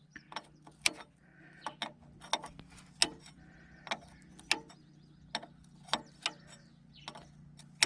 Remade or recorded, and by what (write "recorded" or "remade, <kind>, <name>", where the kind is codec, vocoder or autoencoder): recorded